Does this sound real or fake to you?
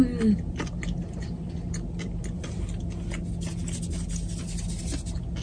real